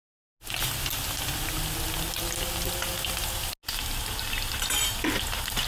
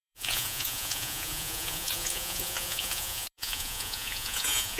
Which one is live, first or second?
first